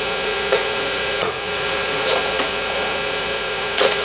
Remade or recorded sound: remade